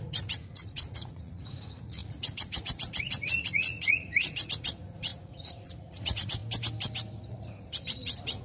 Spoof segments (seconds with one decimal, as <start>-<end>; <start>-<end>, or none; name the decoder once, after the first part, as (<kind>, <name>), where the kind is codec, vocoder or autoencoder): 0.0-6.4 (vocoder, Vocos); 7.3-8.4